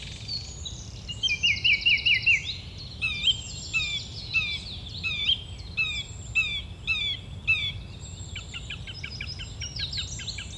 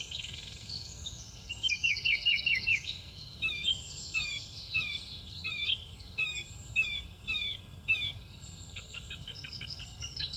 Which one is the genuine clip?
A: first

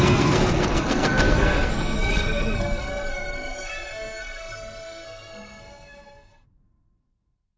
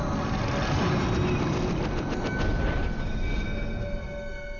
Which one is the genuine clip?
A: second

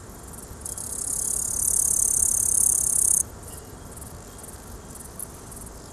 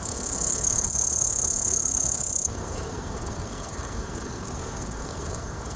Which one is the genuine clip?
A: first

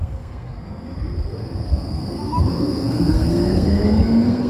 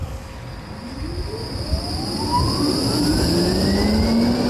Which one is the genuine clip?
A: second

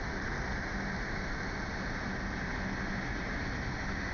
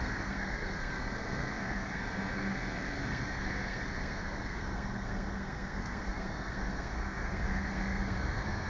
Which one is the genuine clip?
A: first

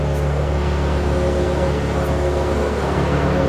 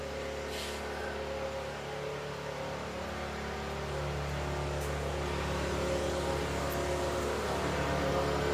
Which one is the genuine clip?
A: second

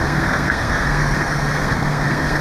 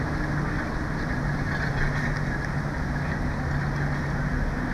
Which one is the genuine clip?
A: second